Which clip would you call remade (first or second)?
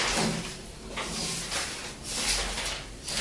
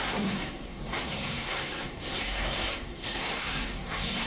second